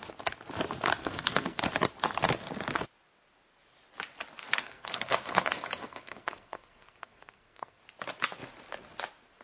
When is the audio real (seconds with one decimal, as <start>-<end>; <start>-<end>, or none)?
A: 0.0-1.0; 1.6-4.4; 7.8-9.4